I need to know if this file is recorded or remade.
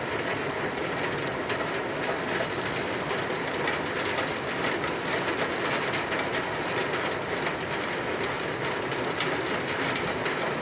recorded